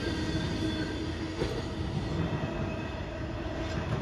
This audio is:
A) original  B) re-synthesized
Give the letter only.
A